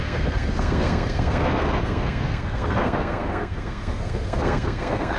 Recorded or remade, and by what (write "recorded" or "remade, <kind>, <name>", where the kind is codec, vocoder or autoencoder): remade, codec, SNAC